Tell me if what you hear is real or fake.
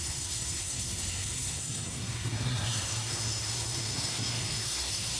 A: fake